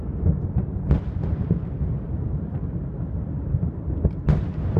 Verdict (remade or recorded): recorded